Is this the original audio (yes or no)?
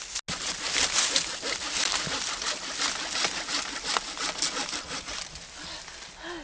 yes